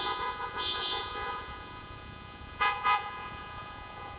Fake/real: fake